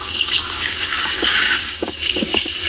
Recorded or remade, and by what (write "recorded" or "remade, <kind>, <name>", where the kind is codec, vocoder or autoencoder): remade, codec, DAC